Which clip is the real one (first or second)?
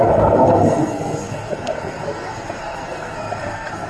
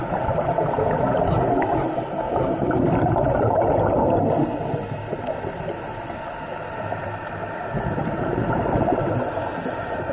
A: second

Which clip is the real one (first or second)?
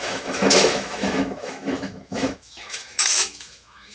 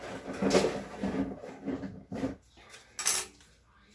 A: second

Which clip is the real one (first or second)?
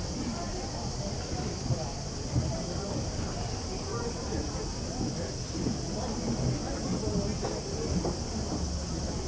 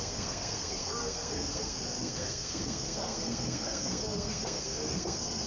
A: first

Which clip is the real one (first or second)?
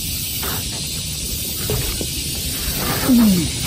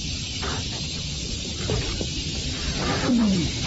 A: first